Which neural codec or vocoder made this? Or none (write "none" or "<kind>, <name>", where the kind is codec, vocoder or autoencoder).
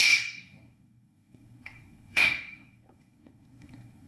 codec, SNAC